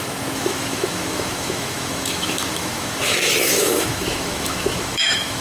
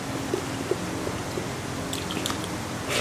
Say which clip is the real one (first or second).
second